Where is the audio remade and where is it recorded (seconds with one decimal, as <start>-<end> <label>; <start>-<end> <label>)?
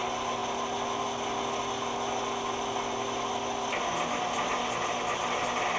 0.0-5.8 recorded